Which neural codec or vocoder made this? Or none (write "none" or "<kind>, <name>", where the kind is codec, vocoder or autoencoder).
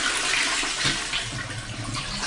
none